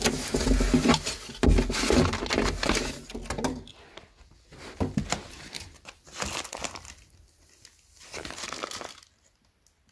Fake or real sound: real